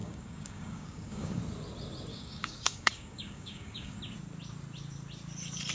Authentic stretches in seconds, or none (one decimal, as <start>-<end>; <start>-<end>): 1.4-2.1; 4.0-5.7